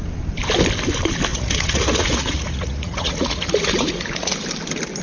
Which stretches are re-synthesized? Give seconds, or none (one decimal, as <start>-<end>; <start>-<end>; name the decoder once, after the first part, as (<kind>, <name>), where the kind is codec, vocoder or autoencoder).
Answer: 1.3-4.3 (vocoder, Vocos)